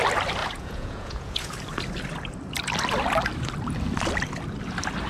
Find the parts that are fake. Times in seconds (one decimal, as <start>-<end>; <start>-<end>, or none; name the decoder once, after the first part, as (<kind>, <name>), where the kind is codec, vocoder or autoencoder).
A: 0.4-1.5 (vocoder, Vocos)